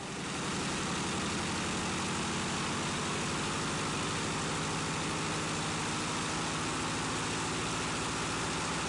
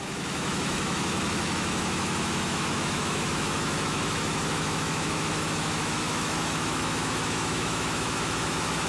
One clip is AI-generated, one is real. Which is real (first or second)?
first